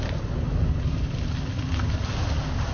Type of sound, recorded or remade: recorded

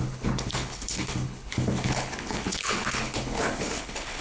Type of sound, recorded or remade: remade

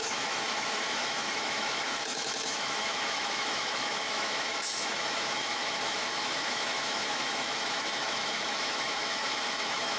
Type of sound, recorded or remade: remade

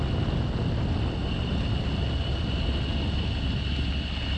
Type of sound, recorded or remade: recorded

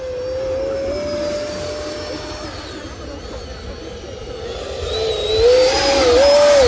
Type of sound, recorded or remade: recorded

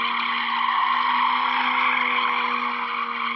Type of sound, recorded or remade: recorded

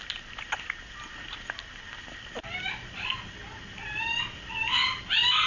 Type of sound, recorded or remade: recorded